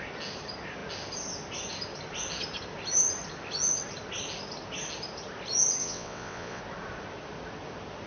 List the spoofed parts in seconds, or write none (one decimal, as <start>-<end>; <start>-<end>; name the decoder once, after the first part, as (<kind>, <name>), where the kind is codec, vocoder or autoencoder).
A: 5.8-6.6 (vocoder, WaveNeXt)

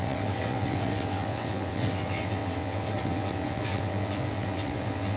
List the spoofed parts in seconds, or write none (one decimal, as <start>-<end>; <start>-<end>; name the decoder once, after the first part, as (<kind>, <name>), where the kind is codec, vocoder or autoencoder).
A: 0.0-5.2 (vocoder, WaveNeXt)

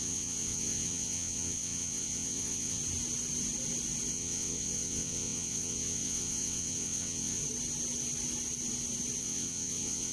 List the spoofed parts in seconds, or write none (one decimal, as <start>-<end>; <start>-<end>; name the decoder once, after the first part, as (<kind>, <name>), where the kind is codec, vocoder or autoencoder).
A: 0.0-2.8 (vocoder, WaveNeXt); 4.1-7.4; 9.2-10.1

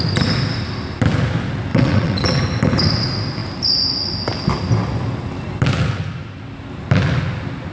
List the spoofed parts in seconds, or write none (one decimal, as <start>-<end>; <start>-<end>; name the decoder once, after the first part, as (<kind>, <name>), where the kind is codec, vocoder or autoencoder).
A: 1.7-2.4 (vocoder, WaveNeXt)

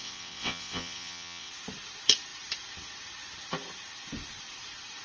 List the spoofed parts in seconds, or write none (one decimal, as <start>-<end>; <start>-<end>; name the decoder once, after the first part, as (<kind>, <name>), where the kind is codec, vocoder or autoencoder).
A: 0.0-1.5 (vocoder, WaveNeXt)